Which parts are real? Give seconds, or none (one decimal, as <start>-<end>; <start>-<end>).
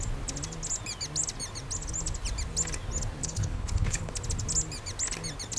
0.0-3.2; 4.1-5.6